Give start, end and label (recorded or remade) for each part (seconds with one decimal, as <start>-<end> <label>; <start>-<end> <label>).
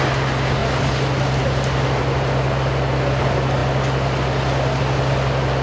0.0-5.6 recorded